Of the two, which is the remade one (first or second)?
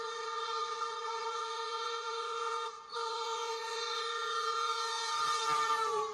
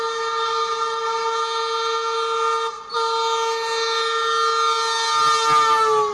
first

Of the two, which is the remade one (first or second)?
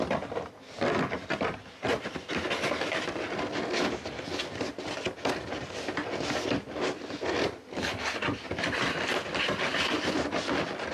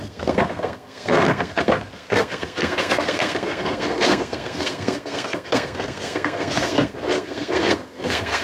second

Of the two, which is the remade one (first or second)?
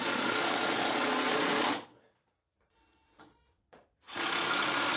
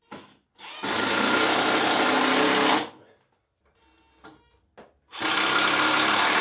first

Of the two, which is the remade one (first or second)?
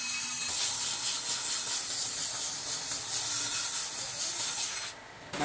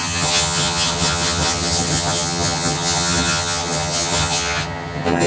second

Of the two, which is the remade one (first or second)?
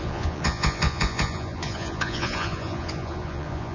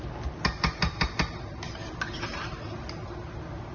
first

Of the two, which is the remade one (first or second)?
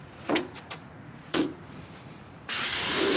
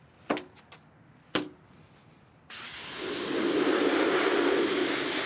first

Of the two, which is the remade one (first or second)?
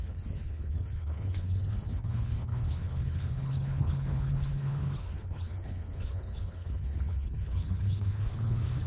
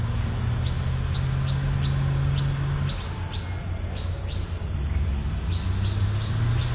first